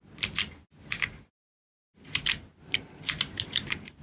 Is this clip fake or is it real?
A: real